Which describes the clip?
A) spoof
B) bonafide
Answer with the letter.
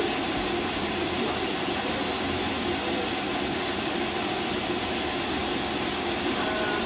B